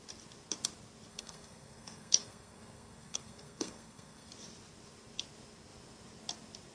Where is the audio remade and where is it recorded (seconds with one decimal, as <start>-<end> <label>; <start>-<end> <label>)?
0.0-1.1 recorded; 1.1-4.3 remade; 4.3-6.7 recorded